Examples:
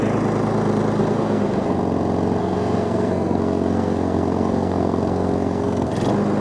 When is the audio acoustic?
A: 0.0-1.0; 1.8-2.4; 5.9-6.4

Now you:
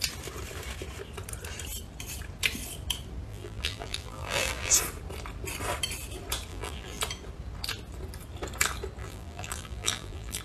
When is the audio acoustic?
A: 0.0-3.3; 4.7-6.5; 7.0-9.0

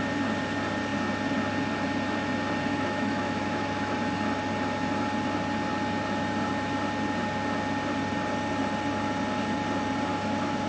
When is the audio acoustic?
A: 0.0-2.7; 4.0-10.1